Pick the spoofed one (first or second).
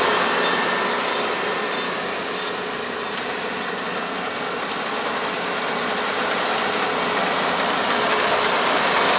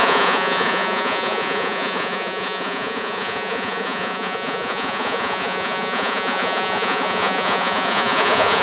second